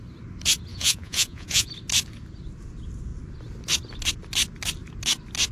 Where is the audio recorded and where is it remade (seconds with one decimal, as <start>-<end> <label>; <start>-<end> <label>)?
0.0-0.7 recorded; 0.7-1.7 remade; 1.7-5.5 recorded